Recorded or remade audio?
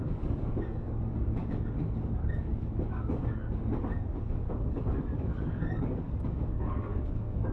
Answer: remade